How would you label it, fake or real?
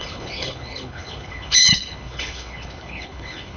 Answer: fake